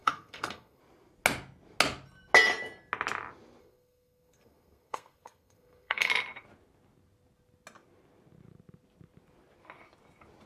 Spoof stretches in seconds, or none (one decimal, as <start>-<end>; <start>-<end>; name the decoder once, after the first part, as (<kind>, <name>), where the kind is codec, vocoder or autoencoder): 0.0-0.8 (codec, SNAC); 3.6-6.1